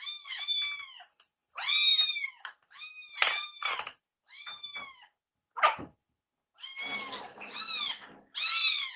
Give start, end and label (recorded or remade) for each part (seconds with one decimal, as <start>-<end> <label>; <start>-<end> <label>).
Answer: 0.0-1.9 recorded; 1.9-5.6 remade; 5.6-9.0 recorded